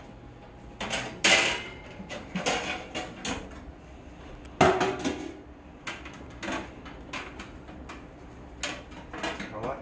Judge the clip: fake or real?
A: real